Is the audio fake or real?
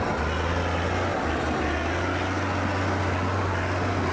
real